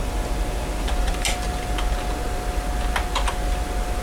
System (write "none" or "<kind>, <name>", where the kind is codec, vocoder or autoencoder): none